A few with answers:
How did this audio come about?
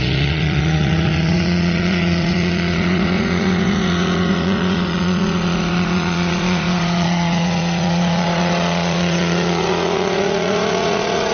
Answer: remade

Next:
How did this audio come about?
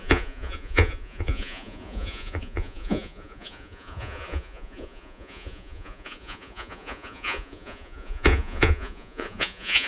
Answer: remade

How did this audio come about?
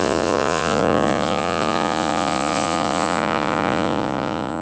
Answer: remade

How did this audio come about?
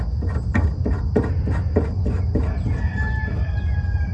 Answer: recorded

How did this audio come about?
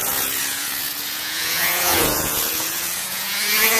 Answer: remade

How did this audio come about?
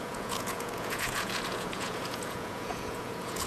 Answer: remade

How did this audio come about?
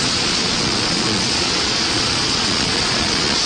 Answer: remade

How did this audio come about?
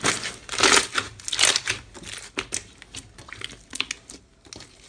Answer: recorded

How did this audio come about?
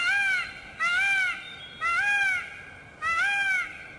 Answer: recorded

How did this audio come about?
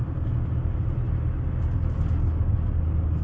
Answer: recorded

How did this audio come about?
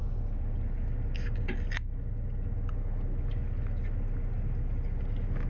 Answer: recorded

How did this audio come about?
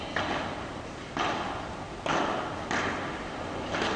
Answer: recorded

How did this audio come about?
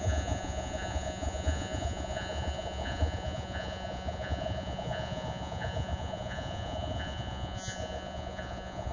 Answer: remade